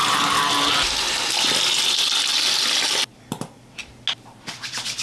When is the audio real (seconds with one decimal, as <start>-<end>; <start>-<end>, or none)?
0.0-0.7; 3.8-4.4